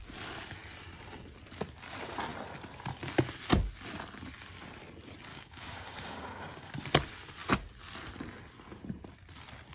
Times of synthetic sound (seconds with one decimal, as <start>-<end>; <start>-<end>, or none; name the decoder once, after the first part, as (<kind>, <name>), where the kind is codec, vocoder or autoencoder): 5.3-6.7 (codec, DAC)